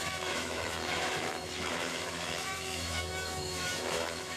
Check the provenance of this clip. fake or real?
fake